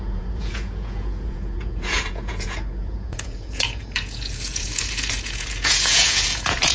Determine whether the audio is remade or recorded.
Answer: remade